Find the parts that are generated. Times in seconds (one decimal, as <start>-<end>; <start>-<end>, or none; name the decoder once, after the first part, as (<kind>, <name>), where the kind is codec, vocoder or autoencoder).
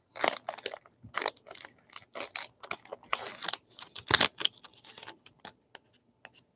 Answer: none